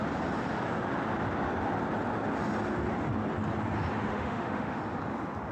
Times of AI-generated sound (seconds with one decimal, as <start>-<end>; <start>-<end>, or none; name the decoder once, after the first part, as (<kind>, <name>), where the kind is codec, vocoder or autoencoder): 4.1-4.8 (autoencoder, DAC-VAE)